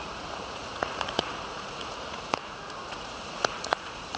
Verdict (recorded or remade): remade